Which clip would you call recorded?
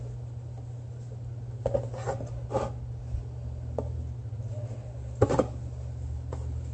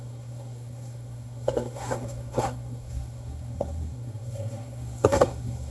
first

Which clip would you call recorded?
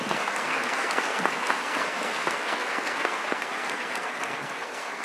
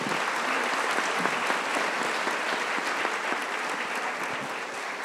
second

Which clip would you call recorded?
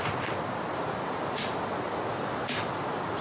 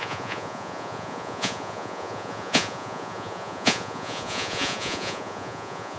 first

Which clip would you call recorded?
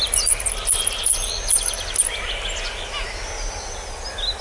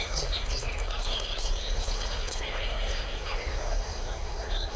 first